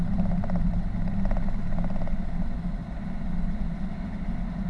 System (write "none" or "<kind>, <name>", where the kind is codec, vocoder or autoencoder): none